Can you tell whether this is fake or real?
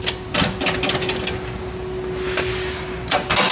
real